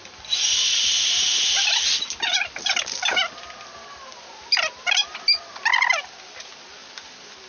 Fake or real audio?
real